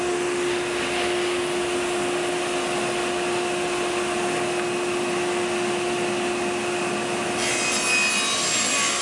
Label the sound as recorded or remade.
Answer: recorded